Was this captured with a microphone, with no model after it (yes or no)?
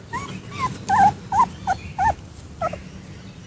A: yes